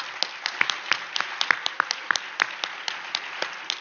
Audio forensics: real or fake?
real